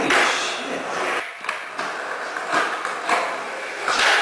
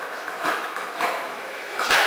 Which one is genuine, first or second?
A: first